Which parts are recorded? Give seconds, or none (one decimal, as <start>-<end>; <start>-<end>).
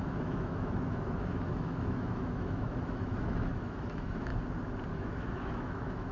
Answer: 4.3-4.9